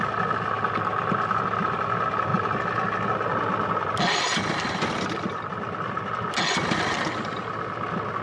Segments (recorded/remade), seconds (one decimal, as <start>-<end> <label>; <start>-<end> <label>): 0.0-8.2 recorded

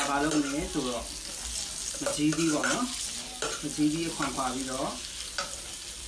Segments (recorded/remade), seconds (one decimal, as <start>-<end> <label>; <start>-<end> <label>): 0.0-6.1 recorded

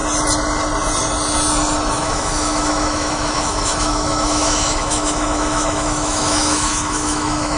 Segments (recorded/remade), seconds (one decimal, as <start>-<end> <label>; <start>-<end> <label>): 0.0-1.9 recorded; 1.9-7.6 remade

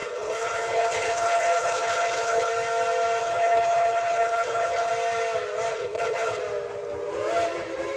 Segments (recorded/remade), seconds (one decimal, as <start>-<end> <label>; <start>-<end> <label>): 0.0-2.5 remade; 2.5-3.2 recorded; 3.2-4.9 remade; 4.9-5.7 recorded; 5.7-6.4 remade; 6.4-8.0 recorded

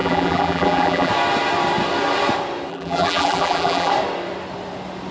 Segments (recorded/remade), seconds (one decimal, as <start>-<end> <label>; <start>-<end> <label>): 0.0-1.1 remade; 1.1-2.7 recorded; 2.7-3.9 remade; 3.9-5.1 recorded